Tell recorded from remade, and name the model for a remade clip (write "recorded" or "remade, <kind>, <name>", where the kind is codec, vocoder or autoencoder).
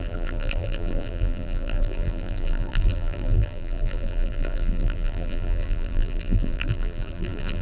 remade, vocoder, BigVGAN v2